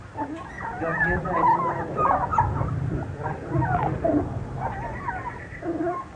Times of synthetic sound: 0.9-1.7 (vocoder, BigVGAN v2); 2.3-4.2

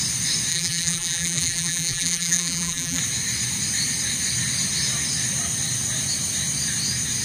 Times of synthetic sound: 0.5-3.0 (vocoder, BigVGAN v2)

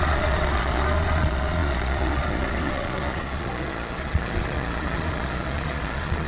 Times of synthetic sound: 0.0-6.3 (vocoder, Vocos)

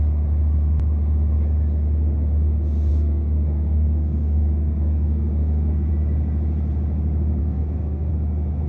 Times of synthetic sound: 2.9-5.9 (codec, SNAC); 7.4-8.1

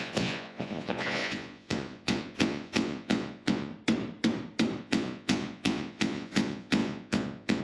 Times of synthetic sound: 0.0-3.7 (vocoder, Vocos); 4.8-7.6

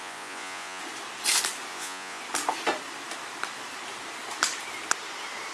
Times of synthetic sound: 0.0-0.8 (vocoder, Vocos); 1.7-2.2

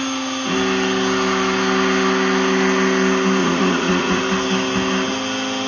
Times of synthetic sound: 3.4-4.2 (vocoder, Vocos)

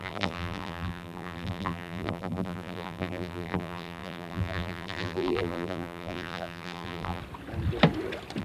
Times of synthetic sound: 0.0-7.2 (vocoder, BigVGAN v2)